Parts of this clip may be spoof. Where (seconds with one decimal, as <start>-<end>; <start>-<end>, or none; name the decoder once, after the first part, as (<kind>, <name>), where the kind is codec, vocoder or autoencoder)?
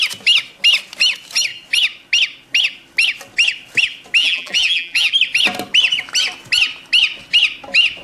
4.2-5.1 (vocoder, BigVGAN v2)